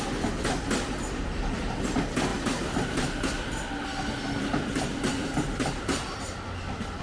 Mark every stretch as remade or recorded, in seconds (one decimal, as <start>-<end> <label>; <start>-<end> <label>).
0.0-2.3 recorded; 2.3-6.5 remade; 6.5-7.0 recorded